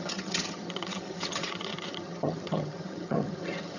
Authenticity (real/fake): fake